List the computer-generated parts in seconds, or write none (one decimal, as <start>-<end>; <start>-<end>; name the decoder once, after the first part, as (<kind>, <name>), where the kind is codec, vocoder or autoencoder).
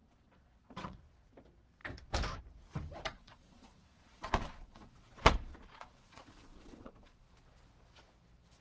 0.0-1.0 (vocoder, Vocos); 3.1-7.2